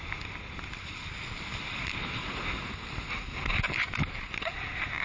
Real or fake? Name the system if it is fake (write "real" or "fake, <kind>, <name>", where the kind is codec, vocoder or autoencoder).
real